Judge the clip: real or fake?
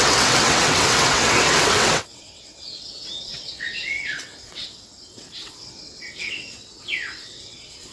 fake